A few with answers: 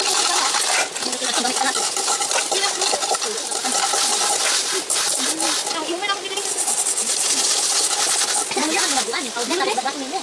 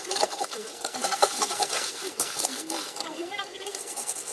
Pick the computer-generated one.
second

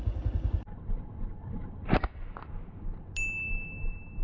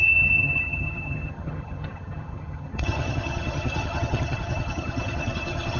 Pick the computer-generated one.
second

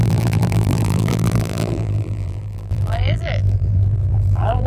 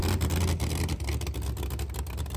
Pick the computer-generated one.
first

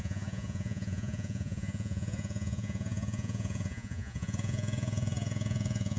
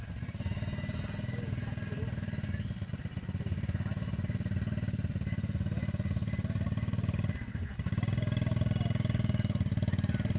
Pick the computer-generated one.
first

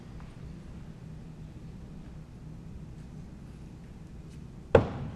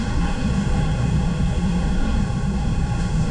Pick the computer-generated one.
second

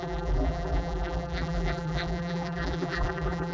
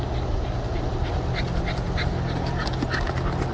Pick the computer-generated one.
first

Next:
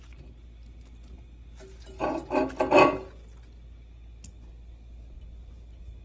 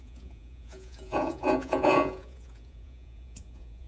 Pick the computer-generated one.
second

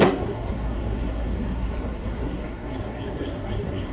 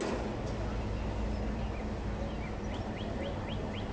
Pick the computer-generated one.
first